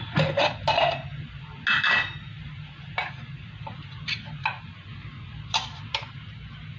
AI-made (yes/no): no